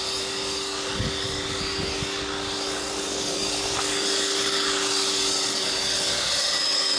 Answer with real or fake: fake